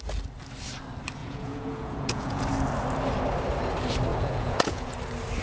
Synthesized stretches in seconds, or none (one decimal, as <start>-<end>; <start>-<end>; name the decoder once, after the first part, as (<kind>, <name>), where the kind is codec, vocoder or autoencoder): 1.2-2.4 (vocoder, Vocos); 4.1-4.9